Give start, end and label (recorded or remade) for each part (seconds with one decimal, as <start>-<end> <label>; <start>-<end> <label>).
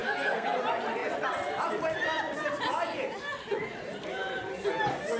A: 0.0-0.6 remade; 0.6-5.2 recorded